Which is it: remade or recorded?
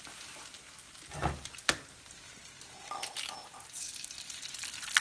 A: recorded